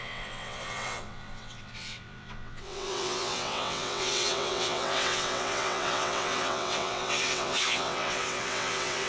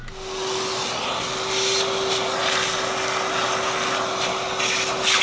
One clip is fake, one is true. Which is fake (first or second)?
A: first